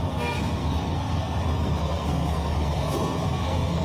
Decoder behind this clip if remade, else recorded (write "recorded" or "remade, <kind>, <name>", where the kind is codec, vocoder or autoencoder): remade, codec, SNAC